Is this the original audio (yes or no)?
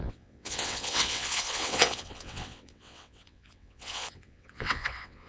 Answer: no